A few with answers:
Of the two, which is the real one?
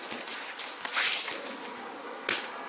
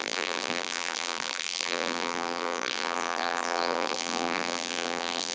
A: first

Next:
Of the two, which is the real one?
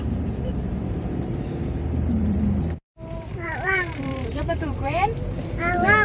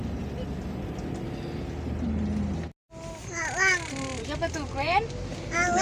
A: second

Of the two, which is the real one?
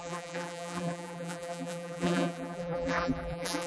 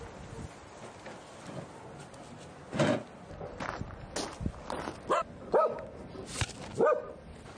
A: second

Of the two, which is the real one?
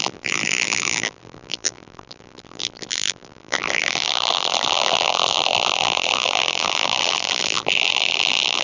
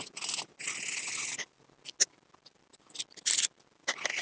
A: second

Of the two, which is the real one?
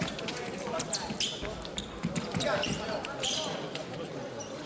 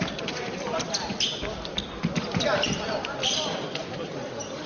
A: first